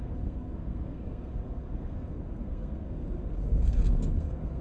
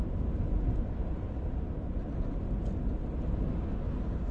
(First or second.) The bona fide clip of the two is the second